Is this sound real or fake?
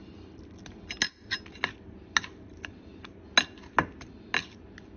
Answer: real